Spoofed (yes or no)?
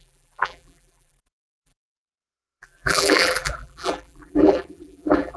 yes